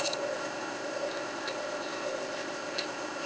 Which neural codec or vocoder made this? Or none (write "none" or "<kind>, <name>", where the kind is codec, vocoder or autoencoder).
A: codec, ZipCodec